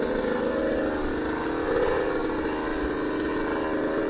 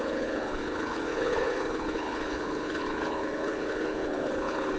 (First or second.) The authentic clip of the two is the first